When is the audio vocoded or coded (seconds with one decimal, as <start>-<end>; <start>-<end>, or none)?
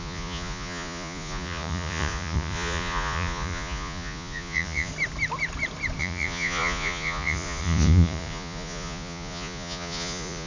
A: 0.0-4.9; 6.0-10.5